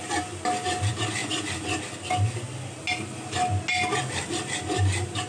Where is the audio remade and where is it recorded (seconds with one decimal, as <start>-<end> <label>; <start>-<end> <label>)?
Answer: 0.0-5.3 recorded